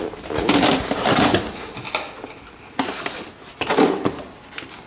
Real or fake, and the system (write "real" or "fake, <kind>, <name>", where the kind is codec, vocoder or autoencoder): real